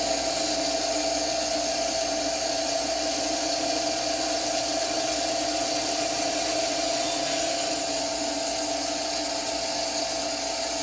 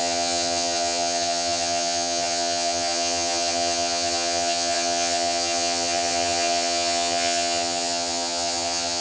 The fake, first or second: second